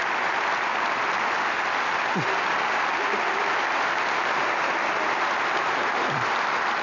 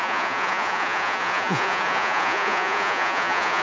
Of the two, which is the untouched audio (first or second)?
first